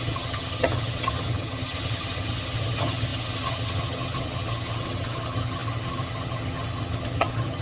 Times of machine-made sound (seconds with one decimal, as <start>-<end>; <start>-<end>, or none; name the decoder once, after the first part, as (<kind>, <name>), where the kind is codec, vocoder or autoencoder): 0.0-7.6 (vocoder, HiFi-GAN)